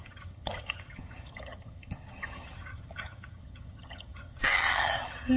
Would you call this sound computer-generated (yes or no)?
yes